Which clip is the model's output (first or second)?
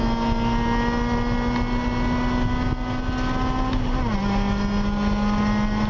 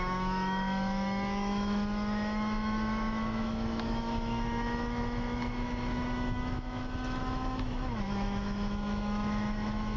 second